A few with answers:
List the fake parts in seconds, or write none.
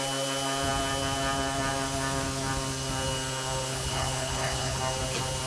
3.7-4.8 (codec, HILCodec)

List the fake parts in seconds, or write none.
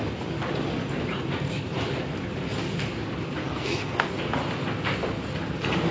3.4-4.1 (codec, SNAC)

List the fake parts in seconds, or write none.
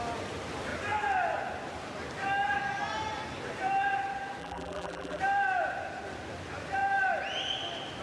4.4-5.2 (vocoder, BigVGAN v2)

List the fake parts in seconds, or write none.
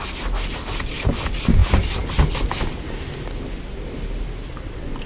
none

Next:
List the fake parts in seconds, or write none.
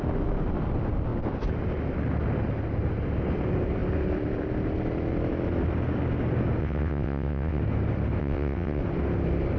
6.6-7.6 (vocoder, WaveNeXt); 8.2-8.8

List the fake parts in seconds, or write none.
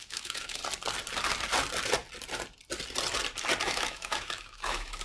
0.0-0.6 (autoencoder, DAC-VAE); 3.6-5.0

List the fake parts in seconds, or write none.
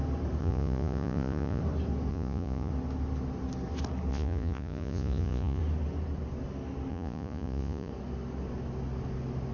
0.4-1.6 (vocoder, Vocos); 2.1-2.7; 4.1-5.6; 6.9-7.9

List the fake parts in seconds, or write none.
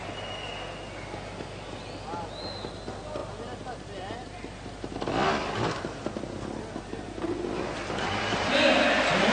none